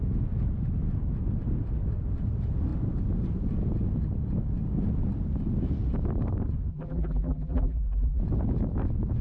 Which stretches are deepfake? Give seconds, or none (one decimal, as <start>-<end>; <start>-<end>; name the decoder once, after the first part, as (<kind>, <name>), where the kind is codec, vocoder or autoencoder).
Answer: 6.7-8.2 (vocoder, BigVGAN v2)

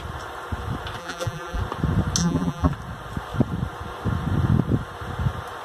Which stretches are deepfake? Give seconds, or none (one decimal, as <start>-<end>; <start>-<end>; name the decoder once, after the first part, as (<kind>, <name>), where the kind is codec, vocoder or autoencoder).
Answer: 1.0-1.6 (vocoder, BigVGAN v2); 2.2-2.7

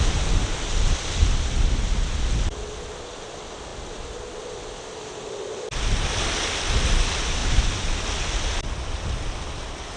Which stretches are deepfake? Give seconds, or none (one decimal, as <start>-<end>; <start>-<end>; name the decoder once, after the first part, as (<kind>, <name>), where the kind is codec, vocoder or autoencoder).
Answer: none

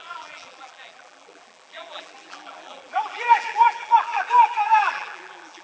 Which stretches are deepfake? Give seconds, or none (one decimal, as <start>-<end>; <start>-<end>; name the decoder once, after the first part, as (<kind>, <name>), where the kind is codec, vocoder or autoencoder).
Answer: 0.0-5.6 (vocoder, BigVGAN v2)

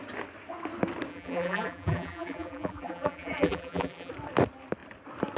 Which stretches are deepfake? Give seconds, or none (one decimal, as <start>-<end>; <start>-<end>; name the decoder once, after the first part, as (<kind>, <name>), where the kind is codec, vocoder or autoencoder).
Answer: 1.1-4.1 (vocoder, BigVGAN v2)

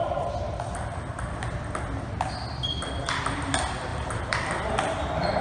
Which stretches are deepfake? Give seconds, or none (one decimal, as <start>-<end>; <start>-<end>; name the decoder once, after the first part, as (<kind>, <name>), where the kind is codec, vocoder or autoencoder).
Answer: 3.9-4.5 (vocoder, BigVGAN v2)